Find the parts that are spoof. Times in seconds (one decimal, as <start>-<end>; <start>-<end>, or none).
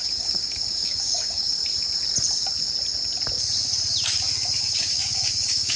0.0-1.6; 4.6-5.8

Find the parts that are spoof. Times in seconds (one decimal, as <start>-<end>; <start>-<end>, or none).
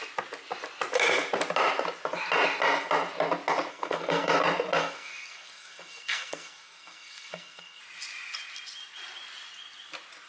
3.7-4.3; 4.8-7.8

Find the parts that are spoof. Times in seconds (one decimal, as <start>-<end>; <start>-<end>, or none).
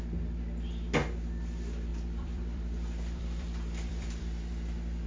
1.9-5.1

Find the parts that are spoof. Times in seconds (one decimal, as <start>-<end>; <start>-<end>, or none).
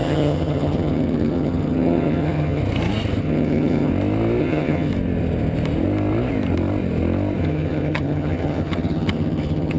0.0-2.6; 3.2-3.9; 4.4-4.9; 7.4-9.8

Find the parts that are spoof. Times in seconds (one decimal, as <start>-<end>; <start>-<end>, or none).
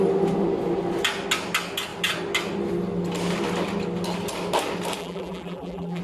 5.0-6.0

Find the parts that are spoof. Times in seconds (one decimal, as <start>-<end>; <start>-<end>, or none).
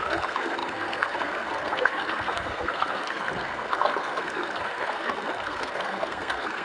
0.0-6.6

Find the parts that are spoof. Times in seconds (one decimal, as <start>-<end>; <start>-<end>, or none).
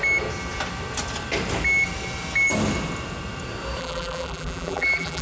3.8-5.2